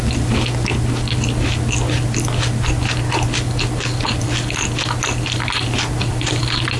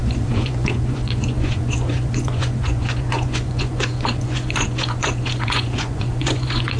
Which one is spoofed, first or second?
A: second